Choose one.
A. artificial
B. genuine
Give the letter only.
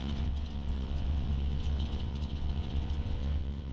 A